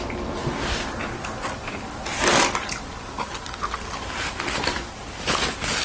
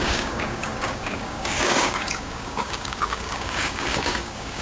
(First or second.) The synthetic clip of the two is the second